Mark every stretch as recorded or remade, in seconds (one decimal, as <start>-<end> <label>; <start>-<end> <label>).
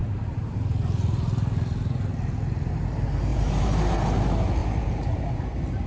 0.0-0.6 remade; 0.6-3.3 recorded; 3.3-3.9 remade; 3.9-4.6 recorded; 4.6-5.4 remade; 5.4-5.9 recorded